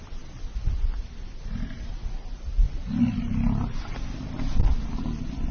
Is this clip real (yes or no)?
yes